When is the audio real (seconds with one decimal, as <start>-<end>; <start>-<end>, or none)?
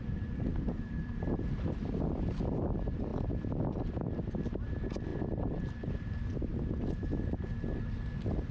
3.1-3.9; 6.5-8.5